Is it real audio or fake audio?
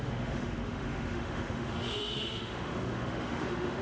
fake